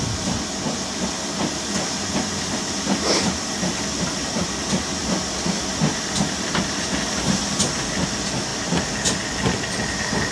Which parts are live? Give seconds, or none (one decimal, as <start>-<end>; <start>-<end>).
0.0-5.0; 7.4-10.3